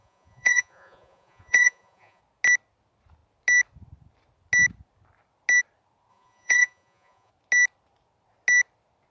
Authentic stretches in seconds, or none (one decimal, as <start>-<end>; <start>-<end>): 2.2-6.1; 7.3-9.1